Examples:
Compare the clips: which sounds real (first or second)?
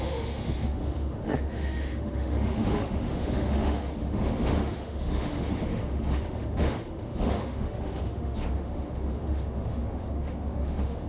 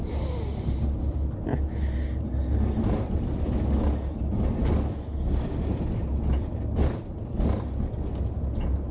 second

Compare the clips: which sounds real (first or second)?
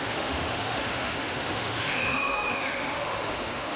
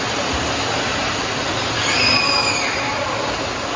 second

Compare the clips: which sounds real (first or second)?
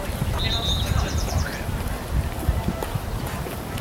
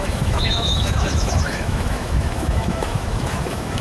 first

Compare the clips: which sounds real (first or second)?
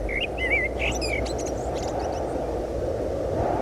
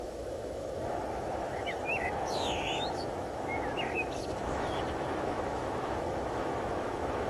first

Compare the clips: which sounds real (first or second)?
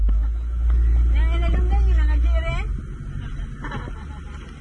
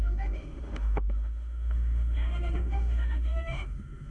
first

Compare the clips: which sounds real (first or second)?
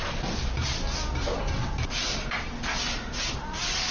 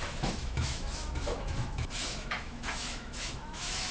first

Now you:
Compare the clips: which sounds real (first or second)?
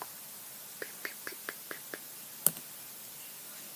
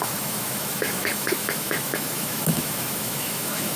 first